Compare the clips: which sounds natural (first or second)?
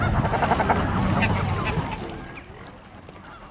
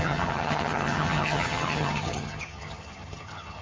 first